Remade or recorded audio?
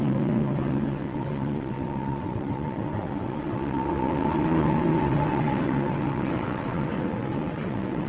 remade